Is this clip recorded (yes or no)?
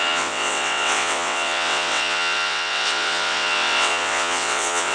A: no